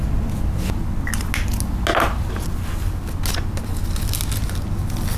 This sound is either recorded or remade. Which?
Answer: recorded